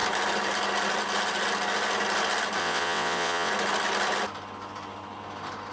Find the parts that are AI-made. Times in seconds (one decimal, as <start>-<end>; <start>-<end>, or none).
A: 2.6-3.5